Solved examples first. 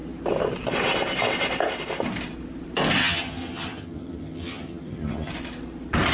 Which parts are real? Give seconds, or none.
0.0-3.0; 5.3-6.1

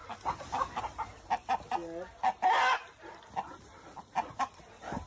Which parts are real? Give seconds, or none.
0.0-5.1

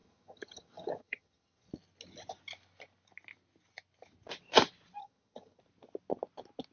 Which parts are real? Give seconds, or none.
1.7-5.0; 5.6-6.7